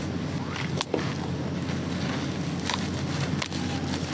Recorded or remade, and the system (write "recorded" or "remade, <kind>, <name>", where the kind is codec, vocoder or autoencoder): recorded